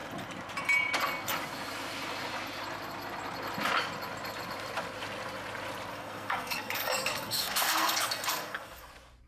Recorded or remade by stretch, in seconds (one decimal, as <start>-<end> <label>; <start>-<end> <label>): 0.0-5.9 recorded; 5.9-8.9 remade; 8.9-9.3 recorded